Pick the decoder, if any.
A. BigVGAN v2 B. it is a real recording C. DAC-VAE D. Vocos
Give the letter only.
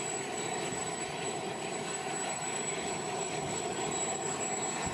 B